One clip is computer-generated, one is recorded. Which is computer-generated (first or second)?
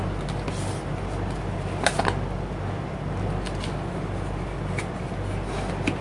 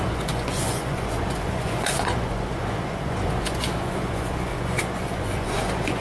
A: second